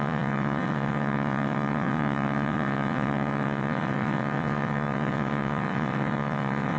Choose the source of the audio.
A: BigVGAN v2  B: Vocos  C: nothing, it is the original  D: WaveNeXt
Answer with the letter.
D